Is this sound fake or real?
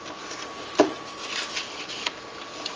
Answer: fake